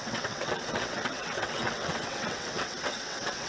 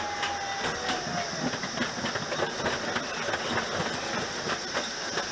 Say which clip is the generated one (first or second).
first